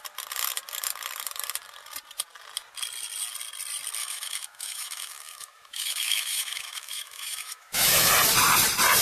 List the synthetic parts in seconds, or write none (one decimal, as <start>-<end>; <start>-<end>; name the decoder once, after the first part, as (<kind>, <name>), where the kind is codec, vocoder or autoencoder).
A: 4.0-8.1 (autoencoder, DAC-VAE)

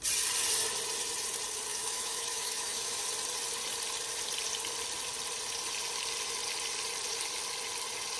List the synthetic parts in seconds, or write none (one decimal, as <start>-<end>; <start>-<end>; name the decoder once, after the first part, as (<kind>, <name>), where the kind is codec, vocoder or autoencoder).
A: 1.7-3.0 (autoencoder, DAC-VAE)

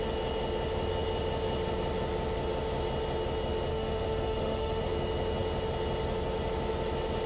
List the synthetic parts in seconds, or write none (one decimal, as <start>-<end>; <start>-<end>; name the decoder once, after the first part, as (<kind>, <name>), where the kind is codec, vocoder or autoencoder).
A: 3.7-4.8 (autoencoder, DAC-VAE)

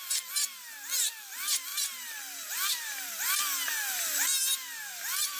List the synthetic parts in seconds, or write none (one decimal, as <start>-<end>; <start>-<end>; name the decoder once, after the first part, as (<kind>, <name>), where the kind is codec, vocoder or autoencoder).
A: none

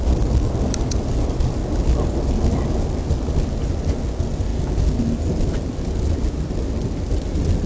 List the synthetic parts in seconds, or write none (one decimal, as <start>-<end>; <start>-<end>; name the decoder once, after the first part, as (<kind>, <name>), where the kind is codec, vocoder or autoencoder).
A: none

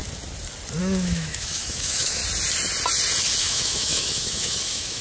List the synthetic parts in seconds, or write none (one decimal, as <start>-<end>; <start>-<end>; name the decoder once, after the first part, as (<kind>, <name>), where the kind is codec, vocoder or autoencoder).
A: 0.8-2.2 (autoencoder, DAC-VAE); 3.4-5.0

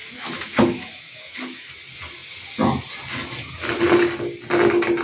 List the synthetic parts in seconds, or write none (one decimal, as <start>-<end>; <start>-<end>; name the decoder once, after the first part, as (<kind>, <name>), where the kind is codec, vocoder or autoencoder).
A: 0.0-1.7 (autoencoder, DAC-VAE)